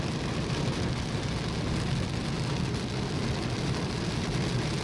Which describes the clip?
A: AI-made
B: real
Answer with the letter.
B